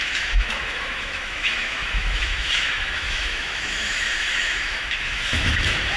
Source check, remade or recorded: remade